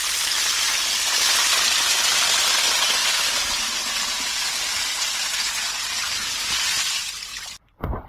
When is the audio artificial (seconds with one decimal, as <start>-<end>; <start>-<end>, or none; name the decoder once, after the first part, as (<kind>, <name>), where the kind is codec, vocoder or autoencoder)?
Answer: none